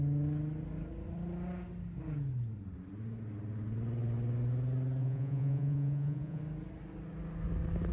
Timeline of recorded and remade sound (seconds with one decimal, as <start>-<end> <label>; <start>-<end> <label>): 0.0-5.0 recorded; 5.0-6.4 remade; 6.4-7.9 recorded